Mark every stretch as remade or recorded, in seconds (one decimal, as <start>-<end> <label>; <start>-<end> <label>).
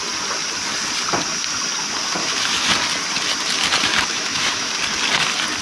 0.0-2.2 recorded; 2.2-2.7 remade; 2.7-3.9 recorded; 3.9-4.7 remade; 4.7-5.6 recorded